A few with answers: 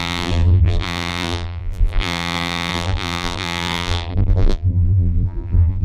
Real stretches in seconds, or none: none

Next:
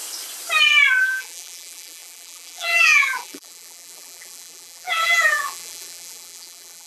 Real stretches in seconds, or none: 0.0-1.0

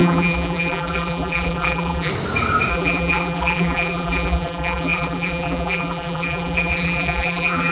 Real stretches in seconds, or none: 2.1-2.7

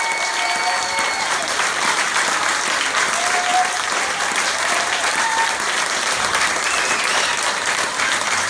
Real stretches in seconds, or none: 0.0-1.4; 2.5-3.5; 8.0-8.5

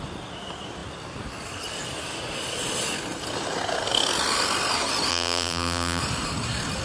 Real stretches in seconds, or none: 0.0-5.1; 6.0-6.8

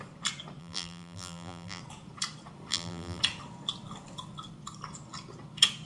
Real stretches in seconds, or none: 0.0-0.6; 1.8-2.7; 3.2-5.9

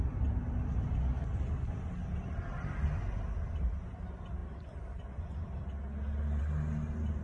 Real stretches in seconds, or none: 0.0-7.2